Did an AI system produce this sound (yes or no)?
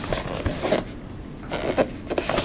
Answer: no